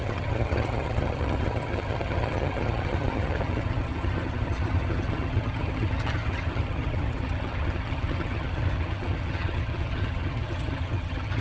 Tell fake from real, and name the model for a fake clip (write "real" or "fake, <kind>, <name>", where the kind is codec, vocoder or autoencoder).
fake, vocoder, HiFi-GAN